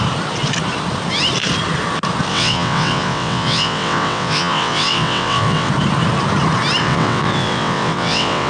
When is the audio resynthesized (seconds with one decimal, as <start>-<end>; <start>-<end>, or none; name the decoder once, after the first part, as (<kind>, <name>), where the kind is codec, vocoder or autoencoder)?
2.3-5.7 (vocoder, WaveNeXt); 6.8-8.5